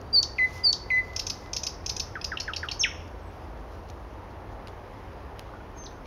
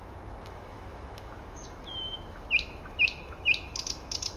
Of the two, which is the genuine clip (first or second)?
first